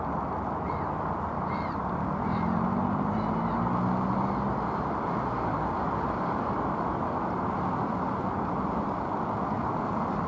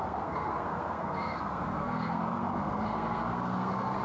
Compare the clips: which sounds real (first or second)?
first